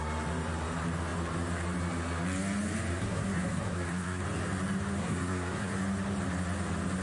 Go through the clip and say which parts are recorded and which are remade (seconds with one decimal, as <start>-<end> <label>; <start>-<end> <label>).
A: 0.0-2.9 recorded; 2.9-4.2 remade; 4.2-5.0 recorded; 5.0-5.7 remade; 5.7-7.0 recorded